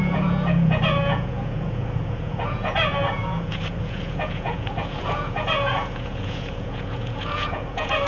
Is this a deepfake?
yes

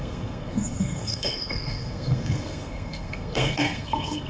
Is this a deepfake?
yes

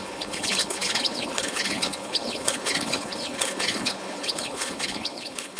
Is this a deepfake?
yes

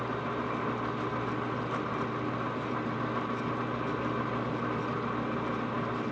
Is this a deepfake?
no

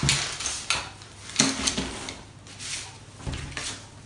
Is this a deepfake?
no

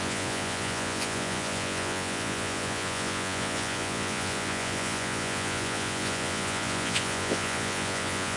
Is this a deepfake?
yes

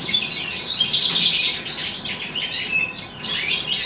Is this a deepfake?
no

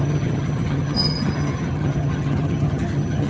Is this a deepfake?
yes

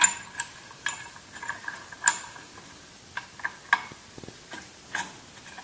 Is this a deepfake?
no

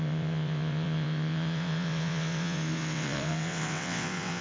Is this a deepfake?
yes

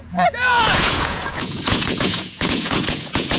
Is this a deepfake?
yes